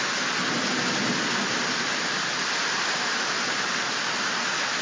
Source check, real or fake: real